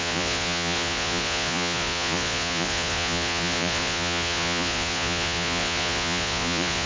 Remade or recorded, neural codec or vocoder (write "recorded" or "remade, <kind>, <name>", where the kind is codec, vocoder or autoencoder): remade, vocoder, Vocos